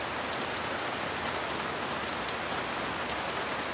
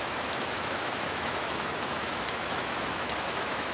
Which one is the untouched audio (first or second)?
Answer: first